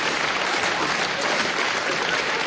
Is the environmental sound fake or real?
real